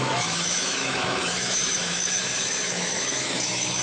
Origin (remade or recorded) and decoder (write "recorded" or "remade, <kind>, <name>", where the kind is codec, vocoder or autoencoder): remade, autoencoder, DAC-VAE